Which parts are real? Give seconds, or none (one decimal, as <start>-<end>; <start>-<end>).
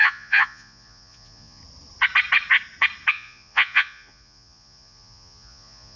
1.6-3.1